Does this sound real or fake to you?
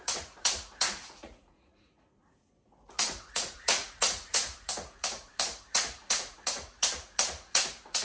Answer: fake